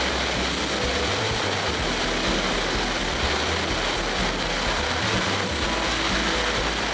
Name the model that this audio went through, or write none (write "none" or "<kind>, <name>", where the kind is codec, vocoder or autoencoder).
none